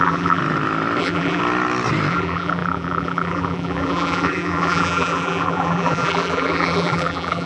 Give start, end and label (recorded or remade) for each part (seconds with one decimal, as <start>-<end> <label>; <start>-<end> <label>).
0.0-0.4 remade; 0.4-1.0 recorded; 1.0-1.4 remade; 1.4-2.1 recorded; 2.1-7.5 remade